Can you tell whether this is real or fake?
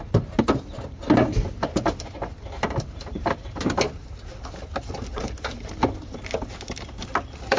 real